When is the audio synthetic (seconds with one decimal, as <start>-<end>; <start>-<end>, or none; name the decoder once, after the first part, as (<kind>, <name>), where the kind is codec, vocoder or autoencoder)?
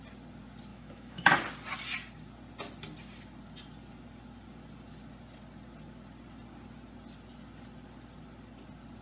0.7-1.4 (autoencoder, DAC-VAE)